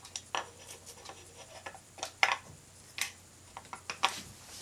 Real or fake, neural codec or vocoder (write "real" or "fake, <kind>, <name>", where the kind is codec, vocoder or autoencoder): real